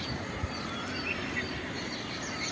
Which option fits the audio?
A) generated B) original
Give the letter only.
A